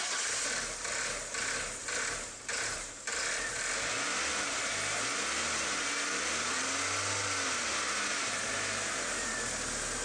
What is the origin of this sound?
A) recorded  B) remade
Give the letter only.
A